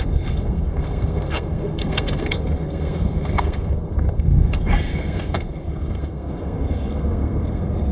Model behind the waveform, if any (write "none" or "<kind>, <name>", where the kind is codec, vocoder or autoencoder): codec, SNAC